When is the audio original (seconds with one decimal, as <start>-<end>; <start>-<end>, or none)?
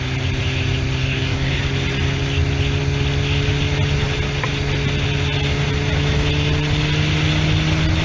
0.0-1.0; 1.6-8.0